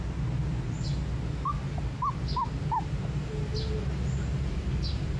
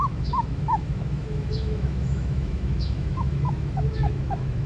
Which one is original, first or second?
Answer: first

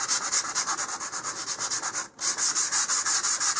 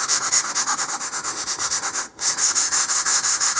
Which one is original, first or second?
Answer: first